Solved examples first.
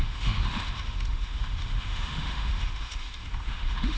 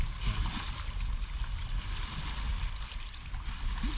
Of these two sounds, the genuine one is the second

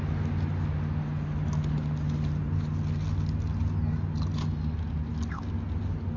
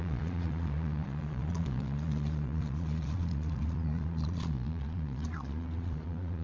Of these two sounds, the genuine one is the first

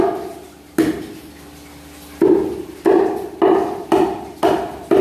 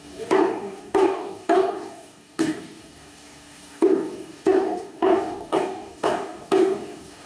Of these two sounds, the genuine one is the first